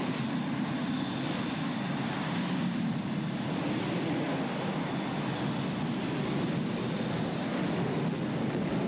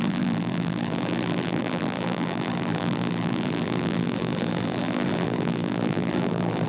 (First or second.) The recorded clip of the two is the first